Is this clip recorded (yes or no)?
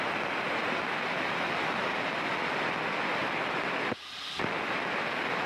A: yes